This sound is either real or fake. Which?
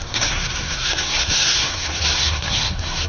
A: fake